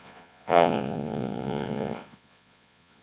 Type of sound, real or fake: fake